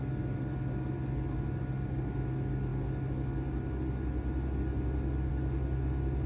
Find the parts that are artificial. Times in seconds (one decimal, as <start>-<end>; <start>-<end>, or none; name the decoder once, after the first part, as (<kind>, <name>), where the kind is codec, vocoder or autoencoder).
none

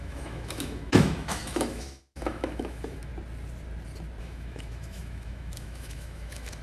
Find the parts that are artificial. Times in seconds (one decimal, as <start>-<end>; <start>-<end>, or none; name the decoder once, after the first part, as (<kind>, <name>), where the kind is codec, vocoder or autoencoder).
0.0-3.1 (autoencoder, DAC-VAE); 4.2-6.6

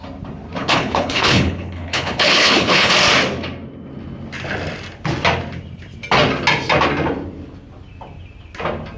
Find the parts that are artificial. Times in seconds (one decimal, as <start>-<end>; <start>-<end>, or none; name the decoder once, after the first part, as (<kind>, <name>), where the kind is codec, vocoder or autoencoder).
0.6-2.9 (codec, HILCodec)

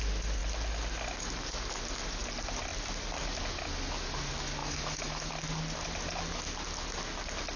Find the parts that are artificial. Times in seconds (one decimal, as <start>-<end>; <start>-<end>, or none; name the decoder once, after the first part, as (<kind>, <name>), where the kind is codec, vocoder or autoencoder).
4.6-5.3 (autoencoder, DAC-VAE)

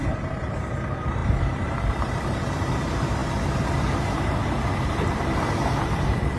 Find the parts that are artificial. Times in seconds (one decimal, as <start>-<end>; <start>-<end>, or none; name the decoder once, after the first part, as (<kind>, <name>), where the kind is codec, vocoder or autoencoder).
0.0-6.4 (vocoder, BigVGAN v2)

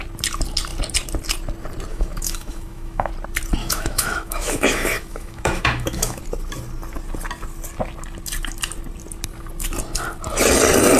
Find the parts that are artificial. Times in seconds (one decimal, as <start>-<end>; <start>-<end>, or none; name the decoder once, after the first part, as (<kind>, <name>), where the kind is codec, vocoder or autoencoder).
1.9-3.1 (autoencoder, DAC-VAE); 3.6-6.2

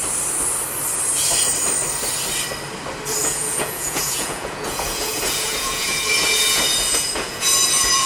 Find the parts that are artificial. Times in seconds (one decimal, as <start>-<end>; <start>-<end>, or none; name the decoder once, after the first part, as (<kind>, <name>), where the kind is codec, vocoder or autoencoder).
3.2-8.1 (vocoder, Vocos)

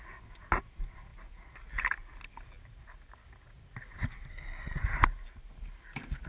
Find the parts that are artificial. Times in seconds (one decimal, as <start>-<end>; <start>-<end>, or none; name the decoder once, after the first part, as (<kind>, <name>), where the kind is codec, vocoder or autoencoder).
4.3-4.8 (codec, SNAC)